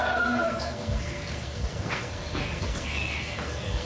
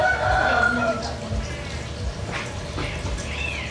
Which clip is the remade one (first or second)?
first